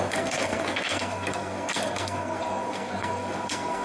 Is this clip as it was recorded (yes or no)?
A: no